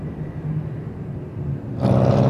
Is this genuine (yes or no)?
yes